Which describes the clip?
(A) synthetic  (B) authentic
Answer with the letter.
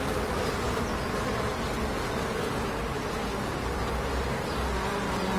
A